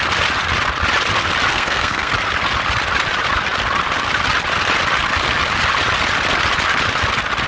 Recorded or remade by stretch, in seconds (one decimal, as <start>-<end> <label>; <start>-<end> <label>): 0.0-1.5 recorded; 1.5-2.1 remade; 2.1-7.5 recorded